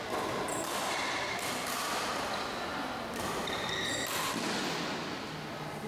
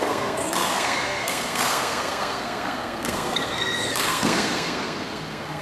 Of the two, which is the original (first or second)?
first